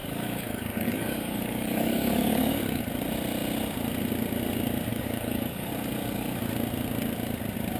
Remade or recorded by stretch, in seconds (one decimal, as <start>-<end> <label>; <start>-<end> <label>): 0.0-2.8 remade; 2.8-4.9 recorded; 4.9-5.7 remade; 5.7-7.8 recorded